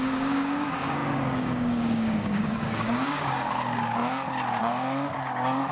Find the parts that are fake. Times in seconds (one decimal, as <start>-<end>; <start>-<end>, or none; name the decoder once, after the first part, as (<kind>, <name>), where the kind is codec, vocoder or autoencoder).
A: 0.0-4.0 (codec, DAC); 4.6-5.7